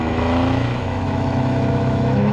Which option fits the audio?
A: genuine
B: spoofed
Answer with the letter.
B